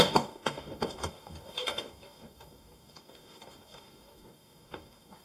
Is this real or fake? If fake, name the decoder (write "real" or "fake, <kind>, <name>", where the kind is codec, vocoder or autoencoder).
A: fake, codec, DAC